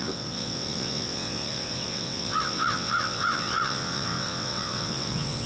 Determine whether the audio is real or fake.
fake